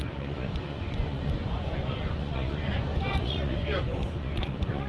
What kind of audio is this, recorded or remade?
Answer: remade